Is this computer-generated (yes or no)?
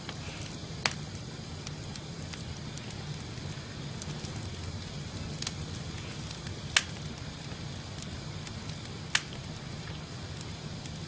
no